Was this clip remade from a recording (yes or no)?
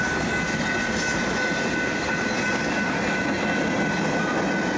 no